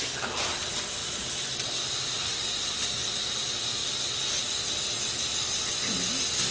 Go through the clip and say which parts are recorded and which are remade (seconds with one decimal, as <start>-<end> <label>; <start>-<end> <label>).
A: 0.0-6.5 recorded